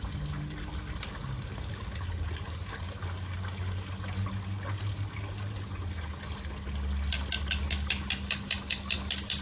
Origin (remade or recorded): recorded